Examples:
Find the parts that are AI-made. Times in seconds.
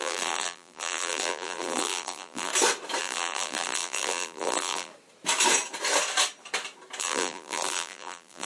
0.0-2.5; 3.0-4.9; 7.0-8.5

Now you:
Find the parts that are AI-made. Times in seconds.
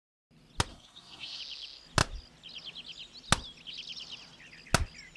0.7-1.4